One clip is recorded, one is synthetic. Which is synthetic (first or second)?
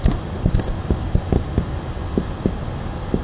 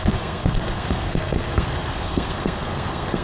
second